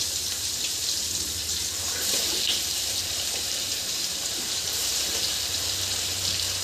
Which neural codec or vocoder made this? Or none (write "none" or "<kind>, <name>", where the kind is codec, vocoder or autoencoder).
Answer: vocoder, BigVGAN v2